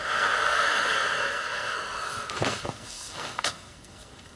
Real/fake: fake